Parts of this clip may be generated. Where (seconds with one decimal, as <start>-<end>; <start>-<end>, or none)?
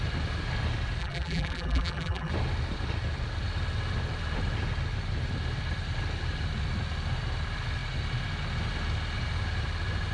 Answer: 1.0-2.3